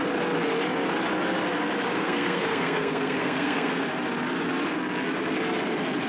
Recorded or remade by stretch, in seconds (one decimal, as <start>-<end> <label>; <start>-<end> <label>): 0.0-1.9 recorded; 1.9-3.8 remade; 3.8-6.1 recorded